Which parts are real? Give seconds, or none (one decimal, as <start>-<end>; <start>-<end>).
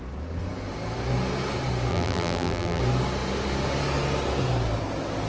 0.0-1.9; 2.8-5.3